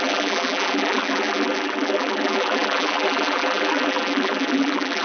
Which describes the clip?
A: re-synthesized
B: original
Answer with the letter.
A